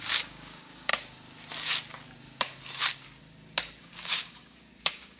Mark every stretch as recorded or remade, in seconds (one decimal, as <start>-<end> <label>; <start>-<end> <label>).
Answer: 0.0-0.9 remade; 0.9-3.8 recorded; 3.8-5.2 remade